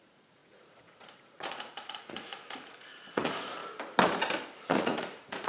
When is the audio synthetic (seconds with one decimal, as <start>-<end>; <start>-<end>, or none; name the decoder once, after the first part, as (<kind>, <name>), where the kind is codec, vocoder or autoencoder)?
0.0-3.6 (vocoder, Vocos); 4.7-5.5